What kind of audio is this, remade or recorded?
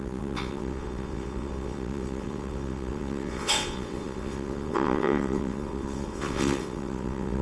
remade